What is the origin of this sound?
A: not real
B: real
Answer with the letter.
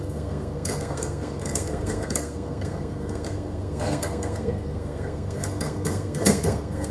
A